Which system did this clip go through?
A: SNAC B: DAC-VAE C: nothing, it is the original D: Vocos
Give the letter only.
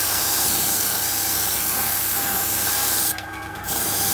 A